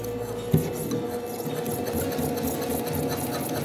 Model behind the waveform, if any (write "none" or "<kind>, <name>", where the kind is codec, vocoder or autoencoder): none